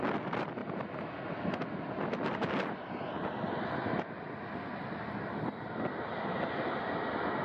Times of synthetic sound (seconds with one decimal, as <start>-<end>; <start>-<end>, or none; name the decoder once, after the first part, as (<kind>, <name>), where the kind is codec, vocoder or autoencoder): none